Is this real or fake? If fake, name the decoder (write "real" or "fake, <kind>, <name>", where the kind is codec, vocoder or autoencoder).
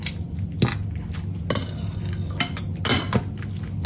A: real